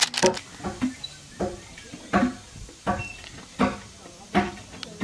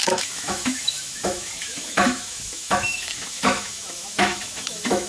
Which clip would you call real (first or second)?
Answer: first